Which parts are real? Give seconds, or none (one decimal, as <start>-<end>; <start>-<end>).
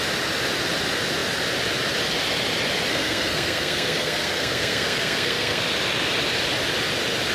0.0-2.9; 5.6-7.3